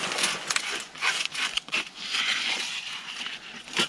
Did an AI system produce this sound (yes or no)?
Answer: yes